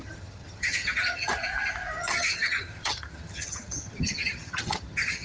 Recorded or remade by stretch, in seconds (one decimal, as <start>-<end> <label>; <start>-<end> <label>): 0.0-1.3 remade; 1.3-2.0 recorded; 2.0-5.2 remade

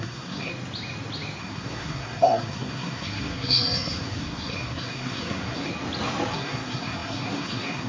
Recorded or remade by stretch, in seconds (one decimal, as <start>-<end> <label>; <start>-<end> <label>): 0.0-0.5 remade; 0.5-1.4 recorded; 1.4-5.7 remade; 5.7-6.3 recorded; 6.3-7.9 remade